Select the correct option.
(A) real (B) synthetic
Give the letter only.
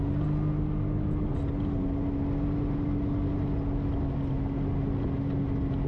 A